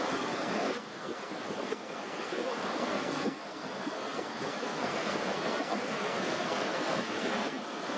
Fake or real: fake